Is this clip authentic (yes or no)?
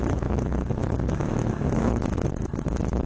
no